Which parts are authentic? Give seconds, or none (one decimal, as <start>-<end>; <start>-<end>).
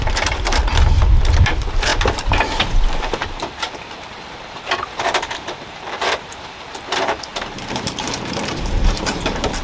0.6-1.2; 7.3-7.8